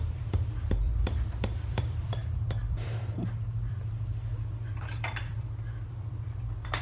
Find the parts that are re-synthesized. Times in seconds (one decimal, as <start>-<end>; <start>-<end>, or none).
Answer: 0.0-6.8